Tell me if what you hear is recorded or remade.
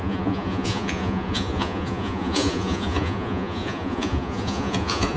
remade